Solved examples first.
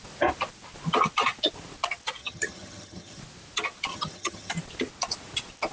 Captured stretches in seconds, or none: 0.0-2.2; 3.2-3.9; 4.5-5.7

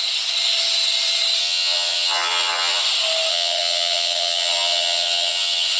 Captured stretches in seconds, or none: 0.0-1.4; 2.8-3.3

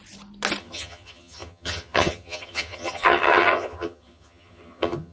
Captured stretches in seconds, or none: 0.0-0.6

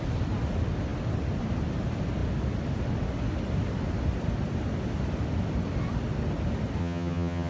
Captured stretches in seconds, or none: 0.0-6.8

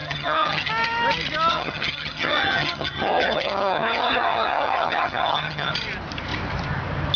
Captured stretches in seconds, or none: 0.7-1.5; 5.7-7.2

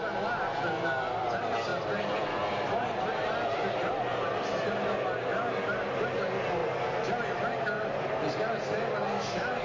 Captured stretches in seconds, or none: 0.0-9.6

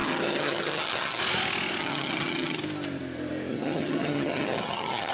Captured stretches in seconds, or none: 1.2-1.8; 2.6-3.5

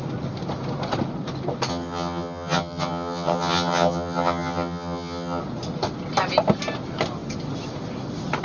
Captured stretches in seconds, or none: 0.0-1.7; 5.4-8.4